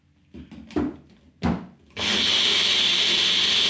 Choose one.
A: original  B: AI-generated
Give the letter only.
A